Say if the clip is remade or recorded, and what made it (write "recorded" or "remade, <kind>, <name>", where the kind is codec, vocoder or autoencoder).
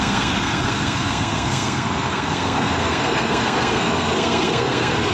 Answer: remade, codec, SNAC